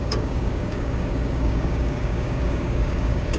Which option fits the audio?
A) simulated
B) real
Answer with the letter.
A